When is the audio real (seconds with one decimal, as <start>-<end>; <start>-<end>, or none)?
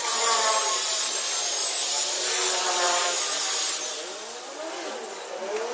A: 0.0-5.7